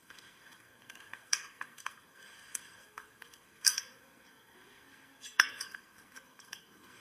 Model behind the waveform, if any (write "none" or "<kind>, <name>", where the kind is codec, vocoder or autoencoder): codec, SNAC